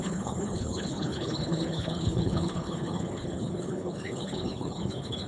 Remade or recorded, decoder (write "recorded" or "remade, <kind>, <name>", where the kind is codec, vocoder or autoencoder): remade, codec, HILCodec